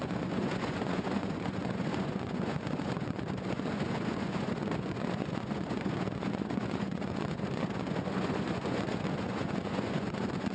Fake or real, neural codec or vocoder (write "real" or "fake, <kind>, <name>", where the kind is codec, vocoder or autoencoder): fake, vocoder, Vocos